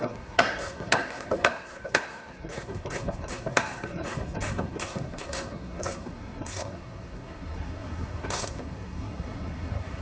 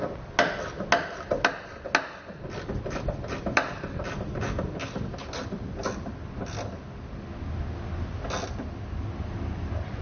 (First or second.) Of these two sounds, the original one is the second